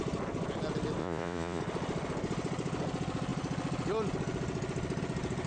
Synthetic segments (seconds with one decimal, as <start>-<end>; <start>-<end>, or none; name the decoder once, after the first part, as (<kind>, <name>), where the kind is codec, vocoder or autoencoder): 1.0-1.6 (vocoder, Vocos)